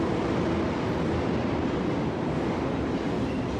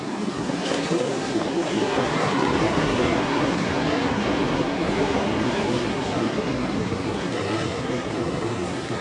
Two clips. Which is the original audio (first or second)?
first